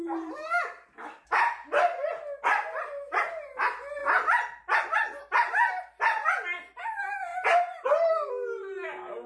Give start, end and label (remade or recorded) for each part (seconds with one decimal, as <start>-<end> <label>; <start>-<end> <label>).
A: 0.0-9.3 recorded